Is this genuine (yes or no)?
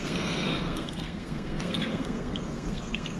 no